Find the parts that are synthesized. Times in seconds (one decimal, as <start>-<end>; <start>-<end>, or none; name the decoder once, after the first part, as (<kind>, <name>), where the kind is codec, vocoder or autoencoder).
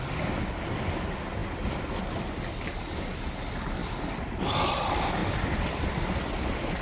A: none